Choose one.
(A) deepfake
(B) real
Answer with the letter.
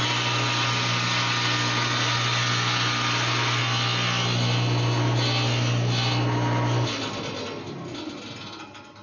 B